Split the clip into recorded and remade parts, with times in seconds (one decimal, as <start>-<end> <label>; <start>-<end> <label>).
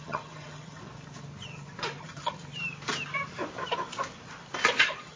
0.0-0.8 remade; 0.8-2.0 recorded; 2.0-2.4 remade; 2.4-4.8 recorded; 4.8-5.2 remade